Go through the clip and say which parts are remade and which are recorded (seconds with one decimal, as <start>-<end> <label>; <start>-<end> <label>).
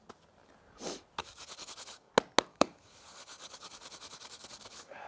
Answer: 0.0-1.2 recorded; 1.2-2.1 remade; 2.1-2.5 recorded; 2.5-5.1 remade